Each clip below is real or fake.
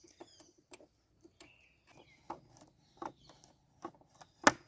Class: real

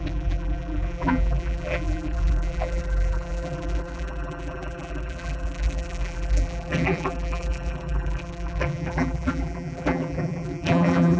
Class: fake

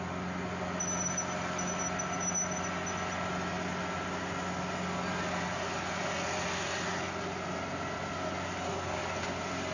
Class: real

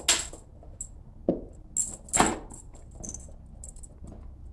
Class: real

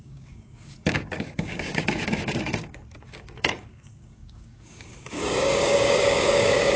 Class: fake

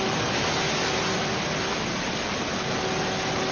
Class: real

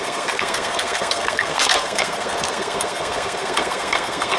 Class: fake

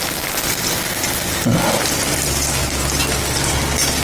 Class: real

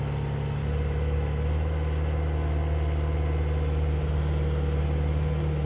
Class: real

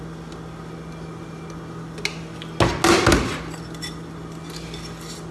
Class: real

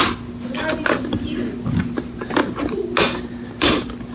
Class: real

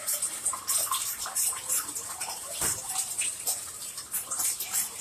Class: fake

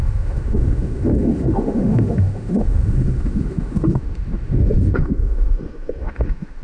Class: fake